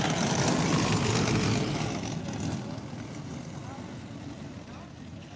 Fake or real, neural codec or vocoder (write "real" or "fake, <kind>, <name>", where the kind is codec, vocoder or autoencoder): real